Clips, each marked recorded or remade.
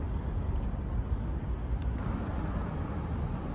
recorded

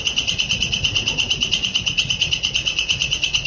remade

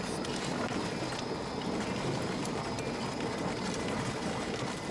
recorded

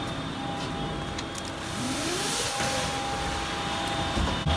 recorded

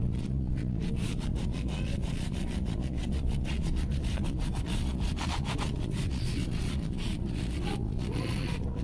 remade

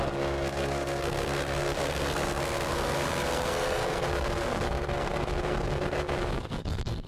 remade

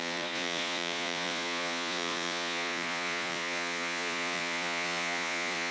remade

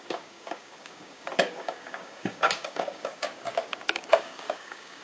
remade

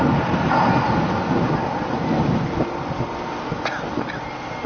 recorded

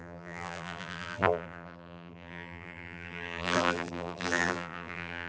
remade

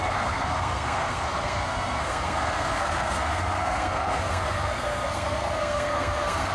remade